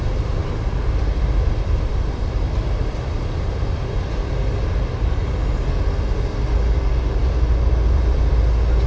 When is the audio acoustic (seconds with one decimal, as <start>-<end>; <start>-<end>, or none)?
0.0-0.4; 5.3-7.2; 8.4-8.9